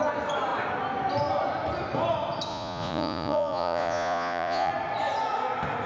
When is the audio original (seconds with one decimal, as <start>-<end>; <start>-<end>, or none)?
0.0-2.5; 4.7-5.9